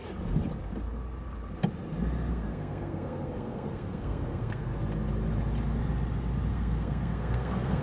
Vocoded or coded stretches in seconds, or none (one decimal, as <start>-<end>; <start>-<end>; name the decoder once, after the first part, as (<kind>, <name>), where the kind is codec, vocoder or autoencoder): 2.3-4.7 (codec, SNAC); 6.5-7.8